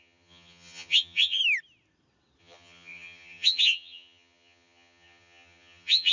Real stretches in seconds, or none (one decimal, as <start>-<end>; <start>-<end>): 1.4-2.4

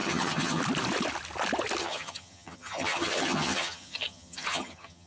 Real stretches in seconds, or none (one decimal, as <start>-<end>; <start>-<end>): 0.6-1.8

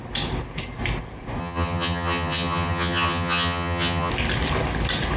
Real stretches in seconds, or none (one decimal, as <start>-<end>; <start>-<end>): 0.0-1.4; 4.1-5.2

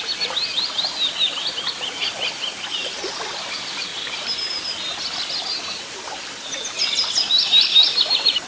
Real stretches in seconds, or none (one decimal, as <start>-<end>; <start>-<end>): 0.0-8.5

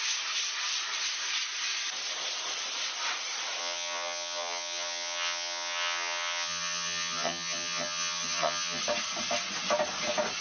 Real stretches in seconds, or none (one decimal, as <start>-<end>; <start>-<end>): 0.0-3.6; 8.8-10.4

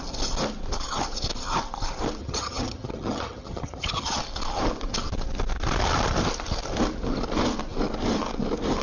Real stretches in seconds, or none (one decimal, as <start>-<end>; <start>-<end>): 0.0-2.2; 4.2-8.8

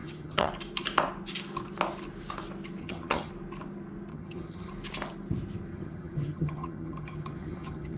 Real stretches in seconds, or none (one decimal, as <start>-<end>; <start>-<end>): 0.5-2.8; 3.3-4.1; 4.7-5.7